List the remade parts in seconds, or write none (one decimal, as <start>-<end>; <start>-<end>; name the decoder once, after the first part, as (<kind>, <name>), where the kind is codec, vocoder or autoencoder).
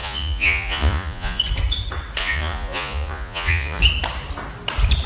0.0-1.4 (vocoder, Vocos); 2.2-3.8